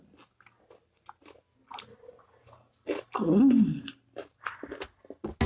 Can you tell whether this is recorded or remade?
recorded